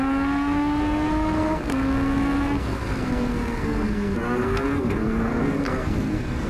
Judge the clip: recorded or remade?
remade